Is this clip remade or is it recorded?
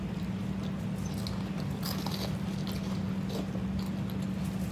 recorded